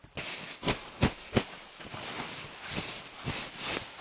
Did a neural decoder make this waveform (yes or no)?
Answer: no